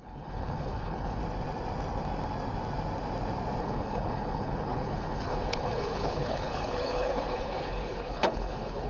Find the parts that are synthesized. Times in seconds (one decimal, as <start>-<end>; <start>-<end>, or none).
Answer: 0.0-1.2; 3.6-8.9